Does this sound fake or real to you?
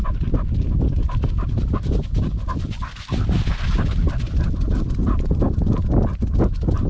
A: real